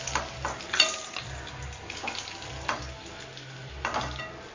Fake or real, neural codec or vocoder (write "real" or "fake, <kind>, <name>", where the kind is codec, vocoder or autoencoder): real